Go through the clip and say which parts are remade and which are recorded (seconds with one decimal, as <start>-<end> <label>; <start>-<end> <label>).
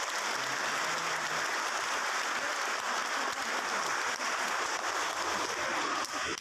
0.0-6.4 recorded